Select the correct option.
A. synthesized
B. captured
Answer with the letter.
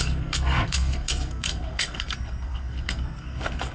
A